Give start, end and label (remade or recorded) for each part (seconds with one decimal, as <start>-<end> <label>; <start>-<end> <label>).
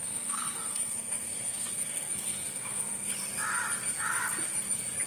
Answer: 0.0-3.1 remade; 3.1-5.1 recorded